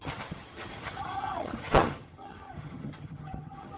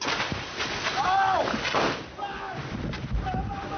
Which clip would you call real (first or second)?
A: second